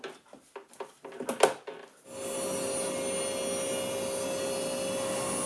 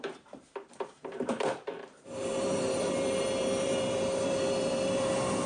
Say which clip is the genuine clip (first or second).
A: first